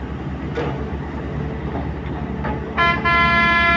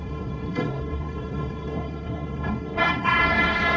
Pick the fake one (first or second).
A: second